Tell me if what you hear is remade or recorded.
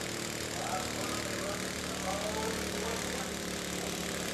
recorded